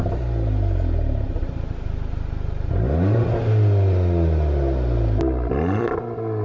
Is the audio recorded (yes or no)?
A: yes